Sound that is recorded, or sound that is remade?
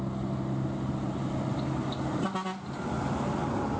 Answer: recorded